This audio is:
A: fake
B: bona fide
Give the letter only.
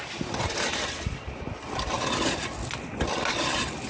B